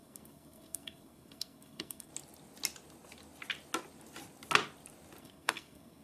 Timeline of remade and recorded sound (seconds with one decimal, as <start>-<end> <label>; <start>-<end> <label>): 0.0-2.1 remade; 2.1-5.2 recorded; 5.2-6.0 remade